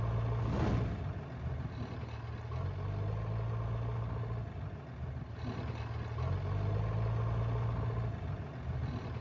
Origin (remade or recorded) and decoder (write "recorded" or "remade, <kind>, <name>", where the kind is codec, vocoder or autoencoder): recorded